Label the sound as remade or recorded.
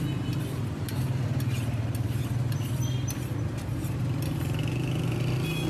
recorded